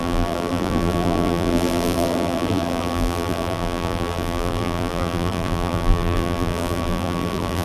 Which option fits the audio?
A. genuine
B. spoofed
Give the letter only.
B